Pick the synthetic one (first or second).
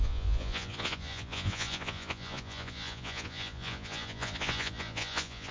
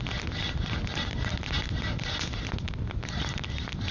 first